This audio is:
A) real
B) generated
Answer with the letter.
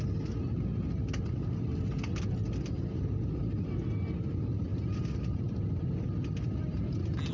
A